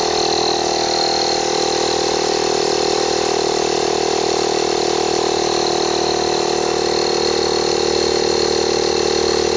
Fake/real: real